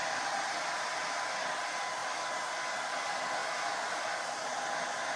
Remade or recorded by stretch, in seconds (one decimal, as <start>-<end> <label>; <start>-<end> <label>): 0.0-5.2 recorded